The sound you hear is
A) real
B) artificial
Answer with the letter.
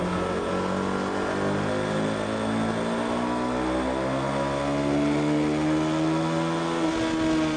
A